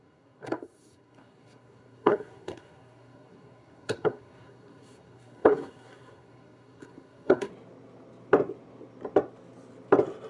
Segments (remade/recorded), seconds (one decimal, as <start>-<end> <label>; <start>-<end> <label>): 0.0-7.5 remade; 7.5-10.3 recorded